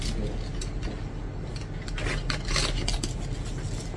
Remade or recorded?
recorded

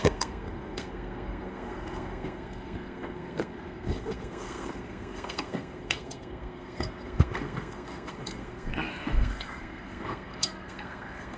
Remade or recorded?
remade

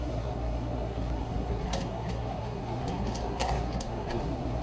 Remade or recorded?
remade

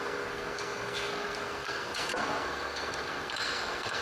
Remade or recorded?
remade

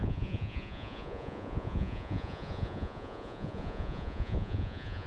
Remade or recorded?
remade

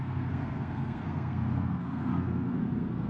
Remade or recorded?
remade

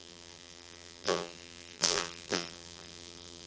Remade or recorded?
remade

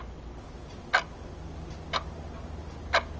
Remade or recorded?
recorded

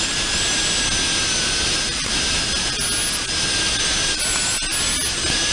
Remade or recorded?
recorded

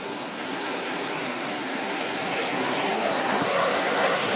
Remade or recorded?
remade